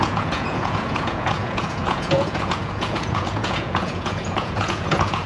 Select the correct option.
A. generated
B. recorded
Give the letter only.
A